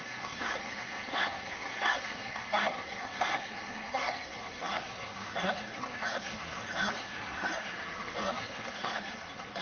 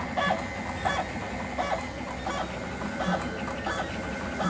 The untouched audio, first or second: second